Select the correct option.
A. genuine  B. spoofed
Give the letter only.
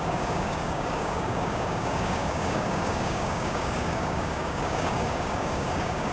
B